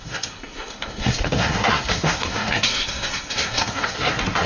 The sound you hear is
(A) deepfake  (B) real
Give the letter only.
A